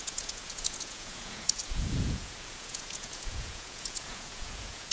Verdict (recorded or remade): remade